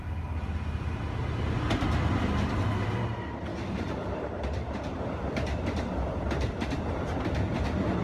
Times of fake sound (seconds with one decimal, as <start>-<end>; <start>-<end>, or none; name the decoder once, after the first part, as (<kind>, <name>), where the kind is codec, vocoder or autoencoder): 3.5-5.2 (vocoder, BigVGAN v2)